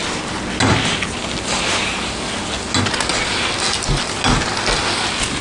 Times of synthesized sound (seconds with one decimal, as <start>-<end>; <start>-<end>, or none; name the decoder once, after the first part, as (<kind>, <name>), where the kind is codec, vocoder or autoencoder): none